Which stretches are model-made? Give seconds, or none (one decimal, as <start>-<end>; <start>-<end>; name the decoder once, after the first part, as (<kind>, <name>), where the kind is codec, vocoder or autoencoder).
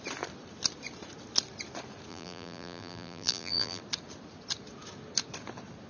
2.1-3.8 (vocoder, BigVGAN v2)